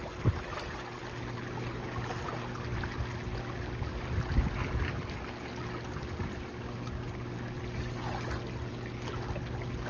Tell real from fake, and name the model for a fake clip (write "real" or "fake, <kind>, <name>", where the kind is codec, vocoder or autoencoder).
real